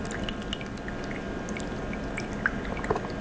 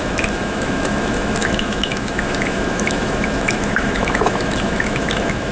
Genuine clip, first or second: first